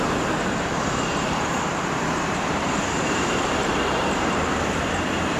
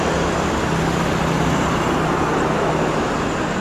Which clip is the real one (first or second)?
second